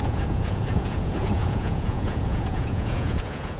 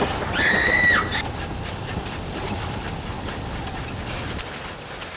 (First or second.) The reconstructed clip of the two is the first